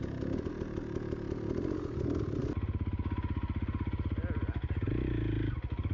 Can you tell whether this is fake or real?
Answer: real